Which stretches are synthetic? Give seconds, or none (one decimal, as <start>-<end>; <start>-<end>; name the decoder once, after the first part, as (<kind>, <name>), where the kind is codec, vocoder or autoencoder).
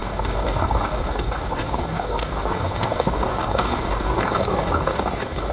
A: 0.0-5.5 (codec, DAC)